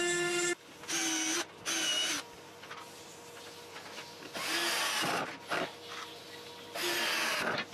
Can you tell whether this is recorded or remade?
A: recorded